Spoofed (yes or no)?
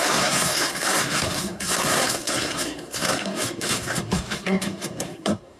yes